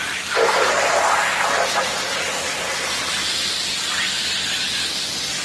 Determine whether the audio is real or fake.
real